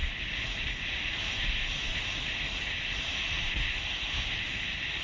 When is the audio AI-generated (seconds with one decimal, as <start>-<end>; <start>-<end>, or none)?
none